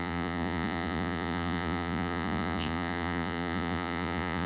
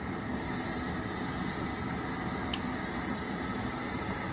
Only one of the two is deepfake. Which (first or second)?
first